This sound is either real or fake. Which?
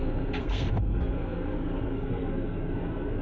fake